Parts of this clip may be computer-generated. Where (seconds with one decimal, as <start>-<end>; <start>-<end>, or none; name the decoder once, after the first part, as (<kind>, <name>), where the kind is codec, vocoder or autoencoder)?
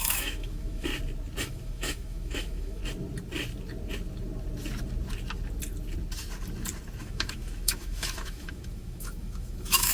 0.0-0.9 (autoencoder, DAC-VAE); 1.4-2.8; 7.0-9.9